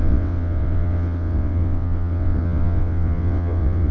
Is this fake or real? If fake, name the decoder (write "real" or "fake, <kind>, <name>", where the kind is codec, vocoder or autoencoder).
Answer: fake, vocoder, WaveNeXt